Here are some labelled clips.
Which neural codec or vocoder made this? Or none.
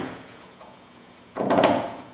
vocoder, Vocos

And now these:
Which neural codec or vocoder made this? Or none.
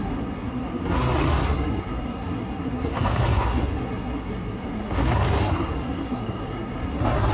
codec, SNAC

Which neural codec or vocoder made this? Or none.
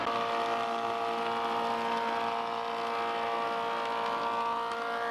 none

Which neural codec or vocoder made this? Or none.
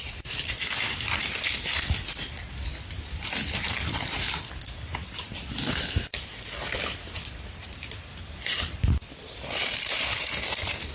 vocoder, BigVGAN v2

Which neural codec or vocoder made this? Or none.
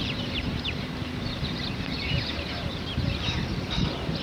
vocoder, BigVGAN v2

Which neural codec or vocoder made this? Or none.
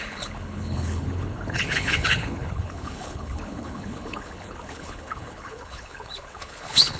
codec, HILCodec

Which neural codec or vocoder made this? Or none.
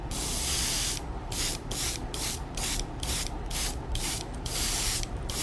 vocoder, BigVGAN v2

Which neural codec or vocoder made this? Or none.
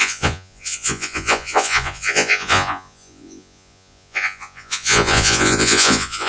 vocoder, Vocos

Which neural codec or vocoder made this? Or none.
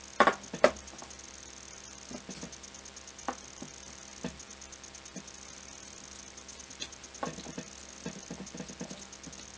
none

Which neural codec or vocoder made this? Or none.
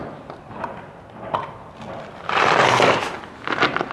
none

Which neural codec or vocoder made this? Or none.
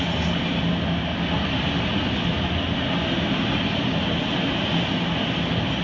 none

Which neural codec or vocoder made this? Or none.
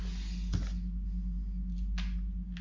none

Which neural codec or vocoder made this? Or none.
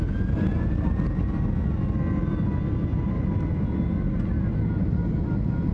none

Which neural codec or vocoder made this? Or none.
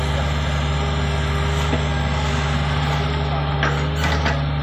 none